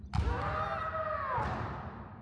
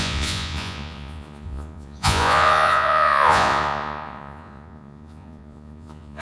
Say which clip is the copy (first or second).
second